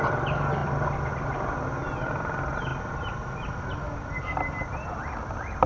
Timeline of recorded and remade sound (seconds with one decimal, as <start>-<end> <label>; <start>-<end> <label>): 0.0-5.7 recorded

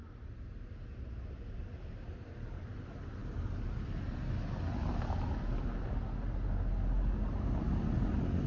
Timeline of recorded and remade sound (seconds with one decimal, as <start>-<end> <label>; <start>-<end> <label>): 0.0-8.5 recorded